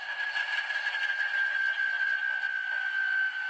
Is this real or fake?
real